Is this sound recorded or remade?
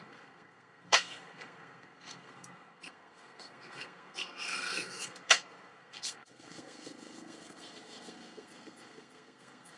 remade